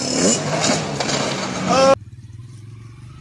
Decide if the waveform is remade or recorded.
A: recorded